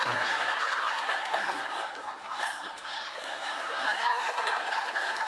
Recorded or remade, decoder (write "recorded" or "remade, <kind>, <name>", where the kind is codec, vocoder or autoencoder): remade, codec, SNAC